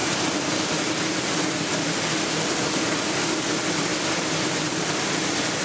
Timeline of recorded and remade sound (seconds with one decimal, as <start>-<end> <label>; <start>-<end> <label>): 0.0-3.9 recorded; 3.9-4.7 remade; 4.7-5.6 recorded